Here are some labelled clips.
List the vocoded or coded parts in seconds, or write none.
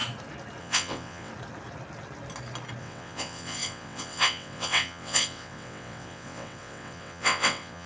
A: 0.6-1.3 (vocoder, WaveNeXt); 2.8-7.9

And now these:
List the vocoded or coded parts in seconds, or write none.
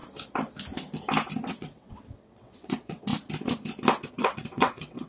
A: 1.5-3.1 (vocoder, WaveNeXt); 4.1-5.1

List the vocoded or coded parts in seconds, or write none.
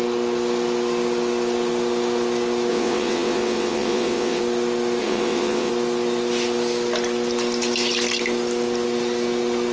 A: 2.7-4.4 (vocoder, WaveNeXt); 5.0-5.7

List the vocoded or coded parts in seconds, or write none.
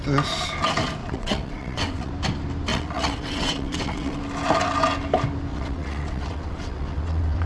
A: 1.0-2.1 (vocoder, WaveNeXt); 2.7-4.2; 5.5-7.5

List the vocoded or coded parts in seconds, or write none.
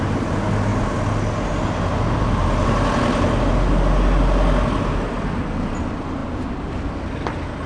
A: none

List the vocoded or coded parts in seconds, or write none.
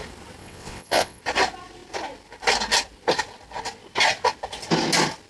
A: 0.4-1.2 (vocoder, WaveNeXt)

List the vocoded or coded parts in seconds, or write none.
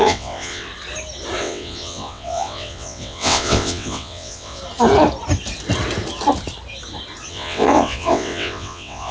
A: 0.0-0.7 (vocoder, WaveNeXt); 1.4-4.6; 7.3-9.1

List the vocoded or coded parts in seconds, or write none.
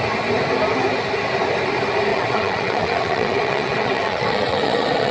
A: 2.1-5.1 (vocoder, WaveNeXt)